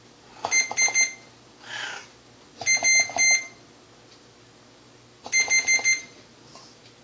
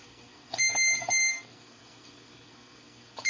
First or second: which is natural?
first